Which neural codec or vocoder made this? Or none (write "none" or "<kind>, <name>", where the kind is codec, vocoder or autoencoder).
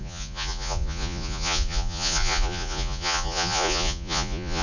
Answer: vocoder, Vocos